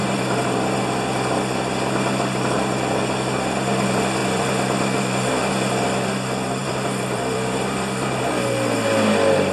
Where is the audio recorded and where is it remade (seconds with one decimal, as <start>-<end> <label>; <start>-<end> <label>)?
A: 0.0-0.8 remade; 0.8-4.2 recorded; 4.2-5.5 remade; 5.5-6.6 recorded; 6.6-8.2 remade; 8.2-9.5 recorded